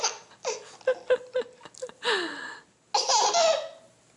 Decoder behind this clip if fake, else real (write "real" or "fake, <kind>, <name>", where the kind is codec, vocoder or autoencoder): real